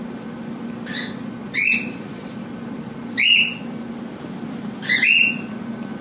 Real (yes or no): yes